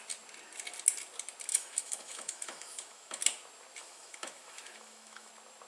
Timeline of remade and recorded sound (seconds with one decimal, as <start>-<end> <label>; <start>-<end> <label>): 0.0-1.5 recorded; 1.5-3.2 remade; 3.2-3.8 recorded; 3.8-5.3 remade; 5.3-5.7 recorded